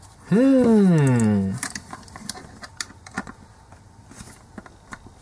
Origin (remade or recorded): recorded